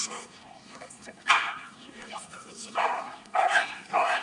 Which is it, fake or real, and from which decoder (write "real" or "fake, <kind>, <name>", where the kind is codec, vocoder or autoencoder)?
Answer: fake, codec, SNAC